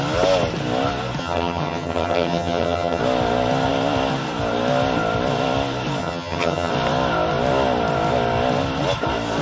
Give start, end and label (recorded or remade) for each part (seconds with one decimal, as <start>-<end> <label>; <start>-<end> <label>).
0.0-1.2 recorded; 1.2-3.0 remade; 3.0-6.0 recorded; 6.0-6.7 remade; 6.7-9.4 recorded